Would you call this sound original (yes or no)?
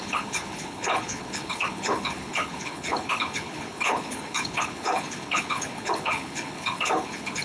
no